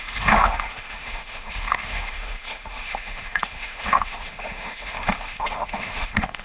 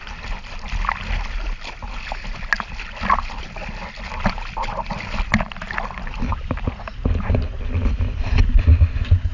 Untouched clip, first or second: second